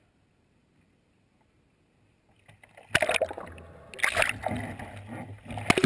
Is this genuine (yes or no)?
yes